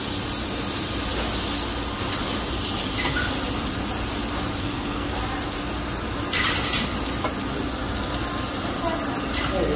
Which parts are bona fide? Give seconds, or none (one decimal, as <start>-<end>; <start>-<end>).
0.0-4.6; 5.2-9.8